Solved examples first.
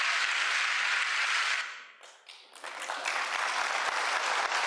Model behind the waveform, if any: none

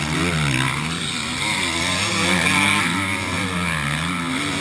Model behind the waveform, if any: none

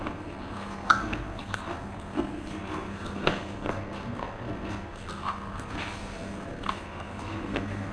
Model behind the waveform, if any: codec, SNAC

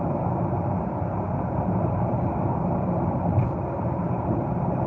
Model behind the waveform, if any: none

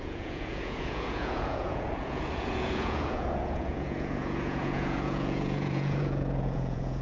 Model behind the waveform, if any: vocoder, Vocos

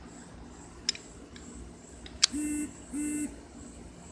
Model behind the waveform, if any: none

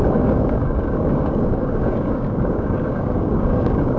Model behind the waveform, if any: codec, DAC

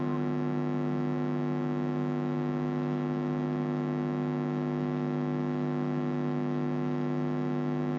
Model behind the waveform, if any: none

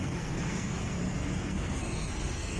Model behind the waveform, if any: codec, SNAC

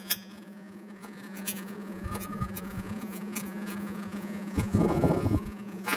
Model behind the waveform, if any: vocoder, Vocos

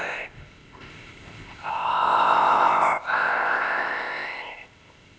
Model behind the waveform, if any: codec, ZipCodec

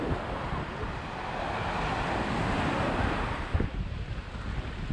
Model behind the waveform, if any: none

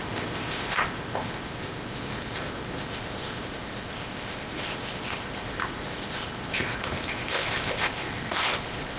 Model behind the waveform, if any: codec, ZipCodec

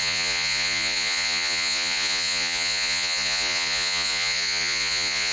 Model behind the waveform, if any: vocoder, Vocos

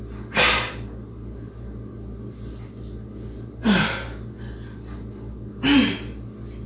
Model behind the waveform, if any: none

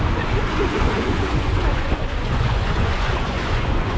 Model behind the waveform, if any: vocoder, Vocos